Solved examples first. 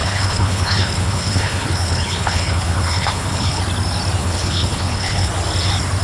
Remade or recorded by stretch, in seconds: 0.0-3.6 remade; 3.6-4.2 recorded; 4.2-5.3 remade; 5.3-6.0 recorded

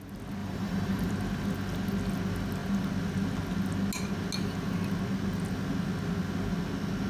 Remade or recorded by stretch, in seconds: 0.0-0.4 recorded; 0.4-1.1 remade; 1.1-7.1 recorded

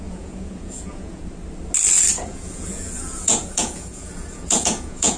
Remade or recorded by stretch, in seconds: 0.0-1.2 remade; 1.2-2.2 recorded; 2.2-5.2 remade

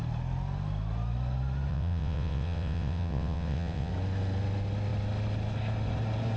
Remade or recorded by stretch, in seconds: 0.0-1.7 recorded; 1.7-3.9 remade; 3.9-6.4 recorded

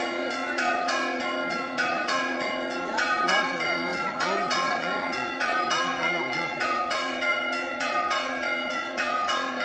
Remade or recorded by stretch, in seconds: 0.0-9.6 remade